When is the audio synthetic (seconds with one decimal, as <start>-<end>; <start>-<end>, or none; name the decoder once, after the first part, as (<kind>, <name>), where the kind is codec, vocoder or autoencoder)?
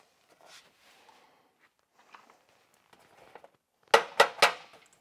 none